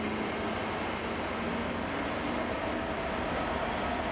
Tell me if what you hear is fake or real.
real